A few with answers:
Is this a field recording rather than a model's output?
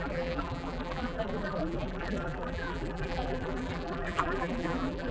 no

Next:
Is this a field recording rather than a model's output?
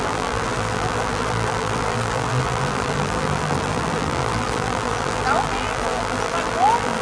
no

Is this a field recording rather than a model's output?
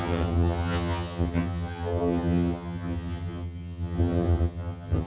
no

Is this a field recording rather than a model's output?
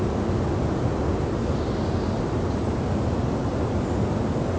yes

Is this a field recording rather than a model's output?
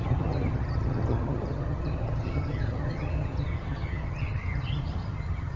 no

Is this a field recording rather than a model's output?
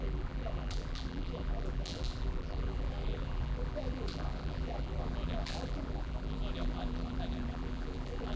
no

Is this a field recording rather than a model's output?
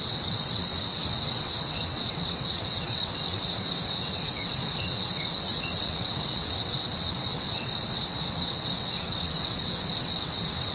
no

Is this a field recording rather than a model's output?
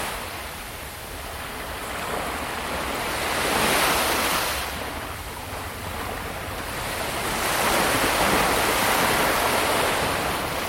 yes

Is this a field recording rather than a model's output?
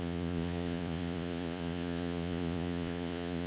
no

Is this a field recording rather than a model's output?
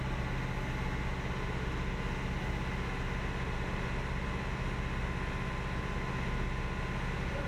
yes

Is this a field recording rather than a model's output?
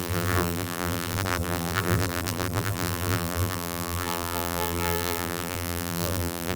no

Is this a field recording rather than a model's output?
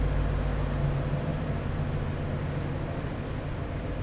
yes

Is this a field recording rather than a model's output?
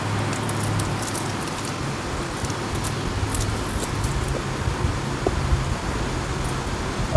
yes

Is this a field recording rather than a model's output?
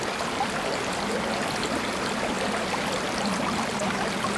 yes